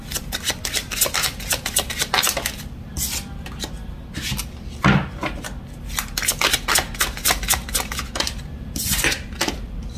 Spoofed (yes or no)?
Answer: no